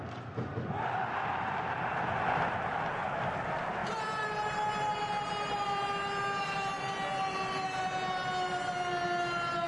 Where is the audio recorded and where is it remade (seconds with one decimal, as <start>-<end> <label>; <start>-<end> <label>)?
0.0-9.7 recorded